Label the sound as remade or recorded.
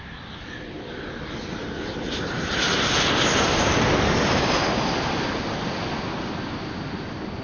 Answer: recorded